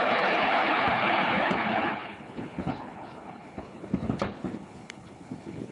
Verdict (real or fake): fake